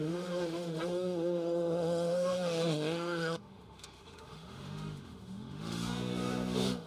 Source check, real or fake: fake